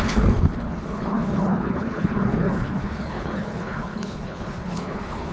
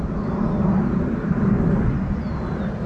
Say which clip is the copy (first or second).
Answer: first